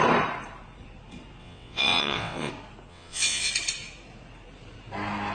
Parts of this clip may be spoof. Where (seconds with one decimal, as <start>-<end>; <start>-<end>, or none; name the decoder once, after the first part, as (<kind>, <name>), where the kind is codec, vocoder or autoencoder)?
1.4-2.5 (vocoder, WaveNeXt); 2.9-3.5